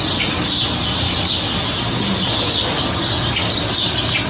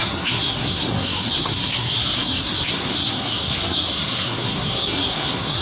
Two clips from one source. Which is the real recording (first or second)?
first